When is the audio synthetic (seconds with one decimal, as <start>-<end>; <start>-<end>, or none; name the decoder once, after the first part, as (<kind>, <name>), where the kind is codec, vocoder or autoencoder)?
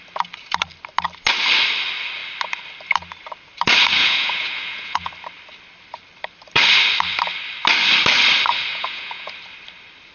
4.0-5.1 (vocoder, Vocos); 8.7-9.3